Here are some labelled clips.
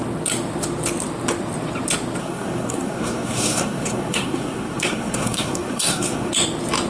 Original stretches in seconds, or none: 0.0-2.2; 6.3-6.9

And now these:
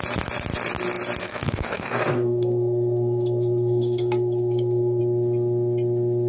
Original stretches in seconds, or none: 0.0-1.2; 5.0-6.3

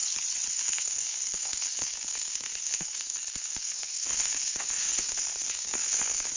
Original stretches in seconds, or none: 0.0-0.5